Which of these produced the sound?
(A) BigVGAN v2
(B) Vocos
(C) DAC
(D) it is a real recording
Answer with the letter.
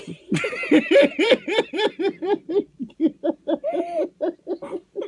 A